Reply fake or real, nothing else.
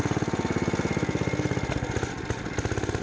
real